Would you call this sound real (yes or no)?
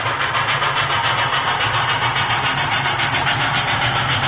yes